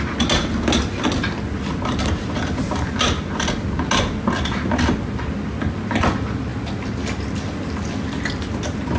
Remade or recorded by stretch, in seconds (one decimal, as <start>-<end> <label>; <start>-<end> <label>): 0.0-9.0 recorded